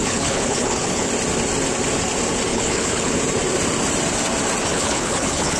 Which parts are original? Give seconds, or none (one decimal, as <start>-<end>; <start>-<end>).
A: 1.1-2.5; 3.2-4.7